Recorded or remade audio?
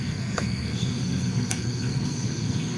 remade